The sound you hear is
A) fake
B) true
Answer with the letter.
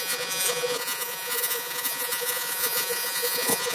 A